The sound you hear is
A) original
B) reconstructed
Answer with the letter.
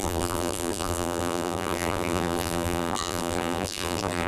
B